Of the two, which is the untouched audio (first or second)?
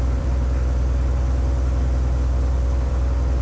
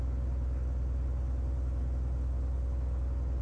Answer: second